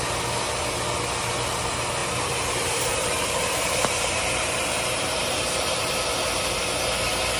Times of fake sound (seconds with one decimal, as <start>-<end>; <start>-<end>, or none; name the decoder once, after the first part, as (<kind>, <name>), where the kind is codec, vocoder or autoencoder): 2.0-6.1 (vocoder, BigVGAN v2)